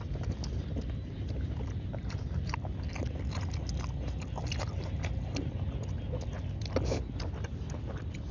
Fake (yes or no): no